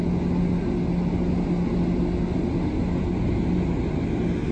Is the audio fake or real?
real